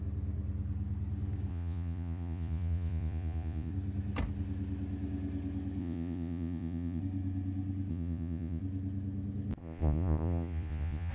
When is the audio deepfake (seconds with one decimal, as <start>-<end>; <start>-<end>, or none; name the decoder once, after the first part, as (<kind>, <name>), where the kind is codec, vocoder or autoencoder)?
1.5-3.7 (vocoder, Vocos); 5.8-7.0; 7.9-8.6; 9.6-11.1